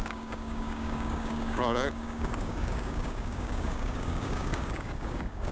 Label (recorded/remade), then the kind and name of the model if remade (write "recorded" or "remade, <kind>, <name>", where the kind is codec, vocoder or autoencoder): remade, codec, DAC